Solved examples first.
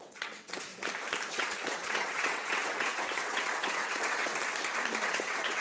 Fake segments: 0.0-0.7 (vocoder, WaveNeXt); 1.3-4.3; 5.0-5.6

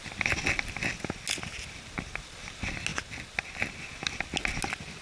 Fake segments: none

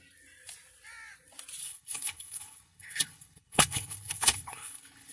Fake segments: 1.6-5.1 (codec, HILCodec)

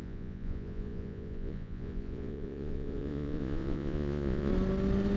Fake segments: 0.0-4.5 (vocoder, Vocos)

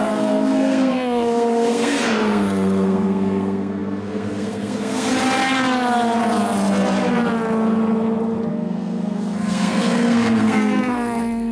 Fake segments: 0.0-5.1 (codec, SNAC); 8.5-11.5

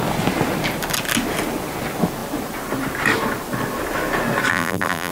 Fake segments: 4.5-5.1 (vocoder, BigVGAN v2)